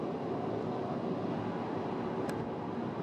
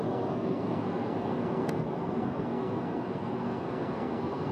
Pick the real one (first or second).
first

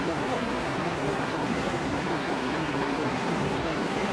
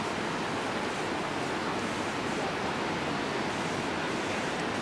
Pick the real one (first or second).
second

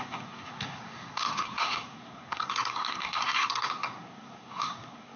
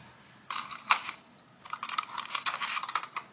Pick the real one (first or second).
second